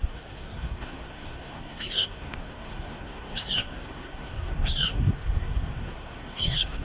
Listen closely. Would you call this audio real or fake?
fake